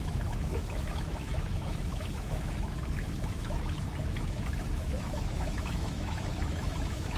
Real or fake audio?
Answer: fake